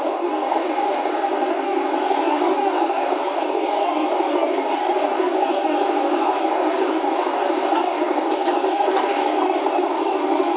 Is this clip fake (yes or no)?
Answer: yes